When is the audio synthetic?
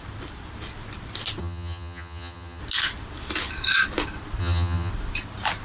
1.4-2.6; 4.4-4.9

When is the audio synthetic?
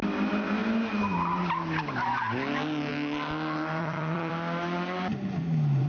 3.8-4.3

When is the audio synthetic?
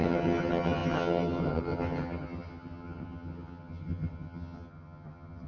0.0-5.5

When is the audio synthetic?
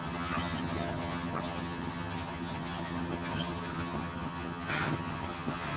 0.0-5.8